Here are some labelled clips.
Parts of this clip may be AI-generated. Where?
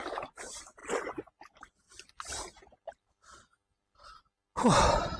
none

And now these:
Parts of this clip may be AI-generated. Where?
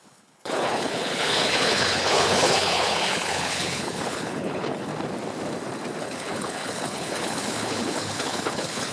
0.0-4.9 (codec, HILCodec); 6.0-8.9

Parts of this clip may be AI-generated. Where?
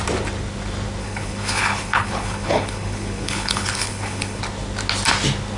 1.0-4.4 (codec, HILCodec)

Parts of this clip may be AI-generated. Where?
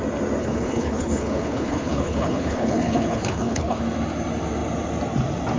0.4-3.8 (codec, HILCodec)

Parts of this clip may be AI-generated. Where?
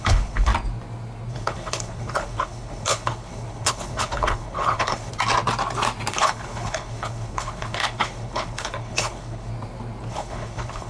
0.0-0.5 (codec, HILCodec); 1.3-5.1; 6.1-9.5; 10.1-10.9